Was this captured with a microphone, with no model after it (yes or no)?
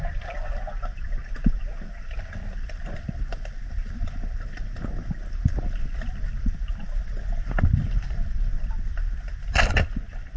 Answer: yes